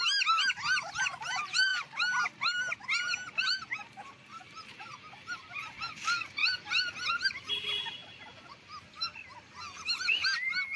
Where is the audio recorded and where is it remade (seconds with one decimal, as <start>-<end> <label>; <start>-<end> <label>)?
0.0-10.8 recorded